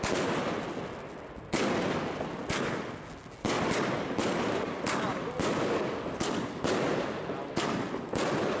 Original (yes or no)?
yes